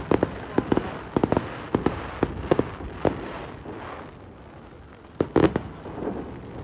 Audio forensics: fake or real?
real